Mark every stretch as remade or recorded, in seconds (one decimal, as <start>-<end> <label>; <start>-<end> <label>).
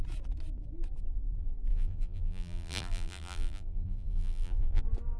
0.0-1.7 recorded; 1.7-4.8 remade; 4.8-5.2 recorded